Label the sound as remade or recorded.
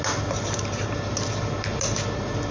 recorded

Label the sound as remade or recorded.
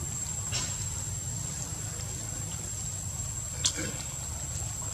recorded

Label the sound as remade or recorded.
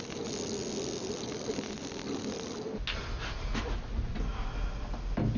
recorded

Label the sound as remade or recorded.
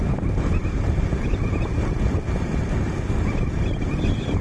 recorded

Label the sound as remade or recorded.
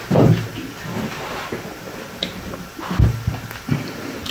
recorded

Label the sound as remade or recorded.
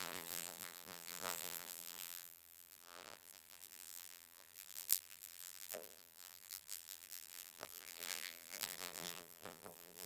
remade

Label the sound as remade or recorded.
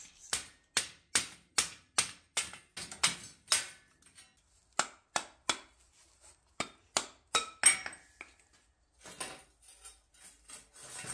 recorded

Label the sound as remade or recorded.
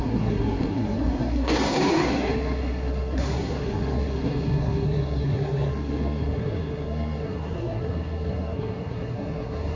remade